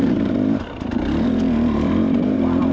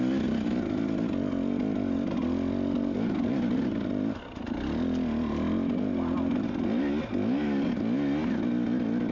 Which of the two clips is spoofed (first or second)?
first